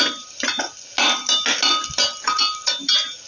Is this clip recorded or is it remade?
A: recorded